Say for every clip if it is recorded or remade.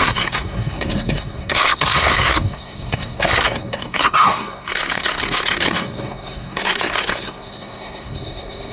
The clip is remade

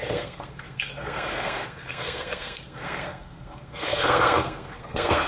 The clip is remade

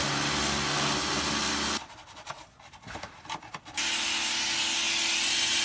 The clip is recorded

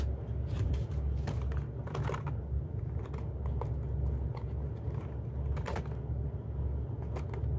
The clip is recorded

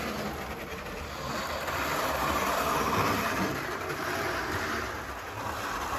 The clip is recorded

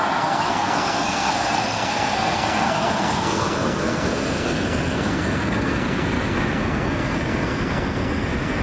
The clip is remade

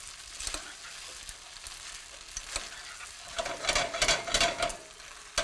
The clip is recorded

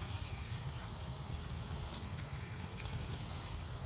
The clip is remade